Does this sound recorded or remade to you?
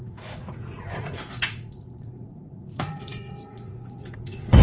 remade